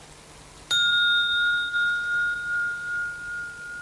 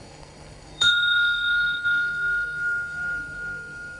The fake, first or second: second